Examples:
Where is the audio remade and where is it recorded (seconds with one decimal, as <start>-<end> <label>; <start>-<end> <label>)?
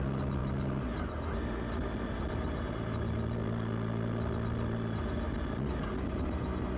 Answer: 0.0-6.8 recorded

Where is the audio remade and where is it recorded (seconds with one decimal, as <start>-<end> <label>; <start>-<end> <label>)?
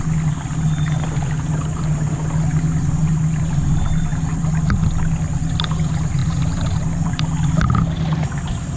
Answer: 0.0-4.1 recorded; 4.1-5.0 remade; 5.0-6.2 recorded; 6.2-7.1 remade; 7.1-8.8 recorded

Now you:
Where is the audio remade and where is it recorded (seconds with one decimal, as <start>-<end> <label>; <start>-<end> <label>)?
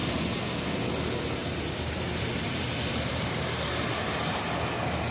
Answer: 0.0-1.4 recorded; 1.4-4.5 remade; 4.5-5.1 recorded